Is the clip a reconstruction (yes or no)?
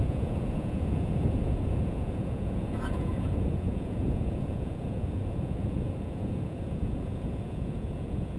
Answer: yes